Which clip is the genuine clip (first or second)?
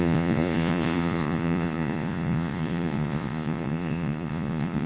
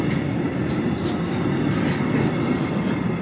second